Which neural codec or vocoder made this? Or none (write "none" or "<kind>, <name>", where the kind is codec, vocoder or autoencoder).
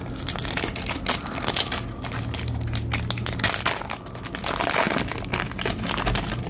none